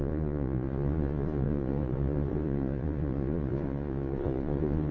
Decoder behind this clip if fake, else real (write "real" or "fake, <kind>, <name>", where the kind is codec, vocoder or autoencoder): fake, vocoder, Vocos